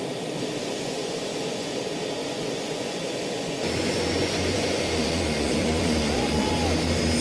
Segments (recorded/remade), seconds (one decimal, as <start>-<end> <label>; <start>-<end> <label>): 0.0-0.6 recorded; 0.6-1.8 remade; 1.8-2.2 recorded; 2.2-6.5 remade; 6.5-7.2 recorded